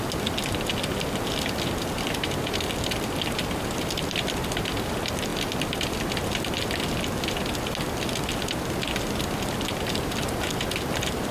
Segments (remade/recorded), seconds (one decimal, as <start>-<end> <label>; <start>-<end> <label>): 0.0-11.3 recorded